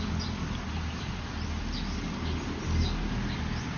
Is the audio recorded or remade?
recorded